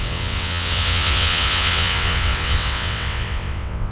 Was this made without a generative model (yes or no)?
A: no